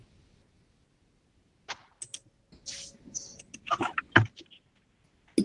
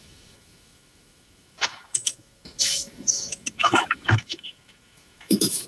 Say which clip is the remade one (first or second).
second